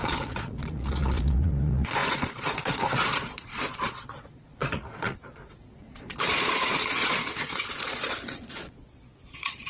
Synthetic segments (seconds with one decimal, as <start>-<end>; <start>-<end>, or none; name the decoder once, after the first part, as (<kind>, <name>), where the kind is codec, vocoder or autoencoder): 0.0-9.7 (vocoder, Vocos)